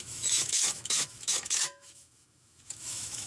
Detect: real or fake fake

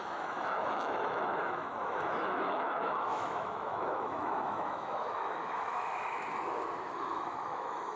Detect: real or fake fake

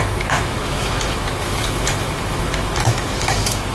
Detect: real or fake fake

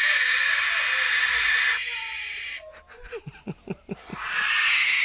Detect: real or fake real